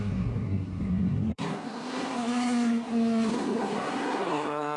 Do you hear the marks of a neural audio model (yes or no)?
yes